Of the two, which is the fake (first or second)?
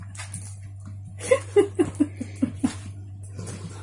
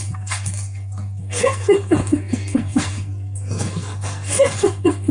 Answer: second